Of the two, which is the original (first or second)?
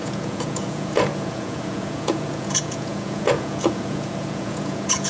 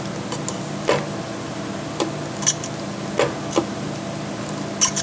second